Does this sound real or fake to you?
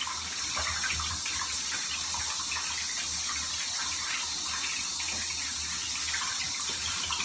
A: real